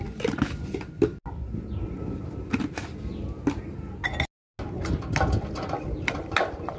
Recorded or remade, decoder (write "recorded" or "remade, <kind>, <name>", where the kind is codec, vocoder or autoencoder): recorded